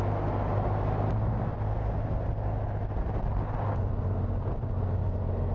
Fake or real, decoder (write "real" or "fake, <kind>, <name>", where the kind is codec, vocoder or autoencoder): real